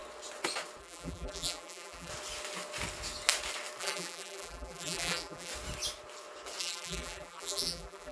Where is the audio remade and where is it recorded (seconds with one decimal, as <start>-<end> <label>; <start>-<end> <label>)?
0.0-0.8 recorded; 0.8-2.1 remade; 2.1-3.8 recorded; 3.8-5.5 remade; 5.5-6.6 recorded; 6.6-8.1 remade